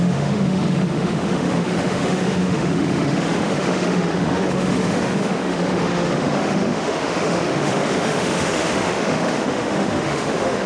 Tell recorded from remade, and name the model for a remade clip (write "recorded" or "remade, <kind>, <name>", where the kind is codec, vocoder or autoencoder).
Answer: remade, autoencoder, DAC-VAE